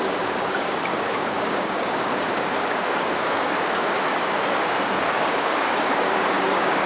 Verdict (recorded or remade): remade